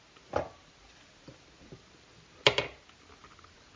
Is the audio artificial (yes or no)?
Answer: no